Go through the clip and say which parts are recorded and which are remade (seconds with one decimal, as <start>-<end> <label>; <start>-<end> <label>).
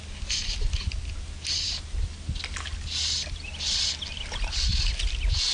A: 0.0-5.5 recorded